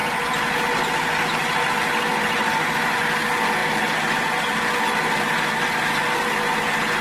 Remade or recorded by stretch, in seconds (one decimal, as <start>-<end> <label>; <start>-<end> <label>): 0.0-7.0 recorded